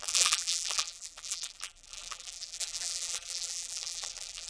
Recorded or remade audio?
remade